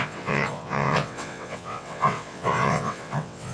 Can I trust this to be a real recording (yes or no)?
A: no